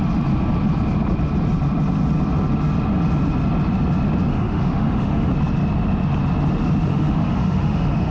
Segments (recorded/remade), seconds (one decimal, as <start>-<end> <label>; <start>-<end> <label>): 0.0-4.3 recorded; 4.3-5.3 remade; 5.3-6.9 recorded; 6.9-8.1 remade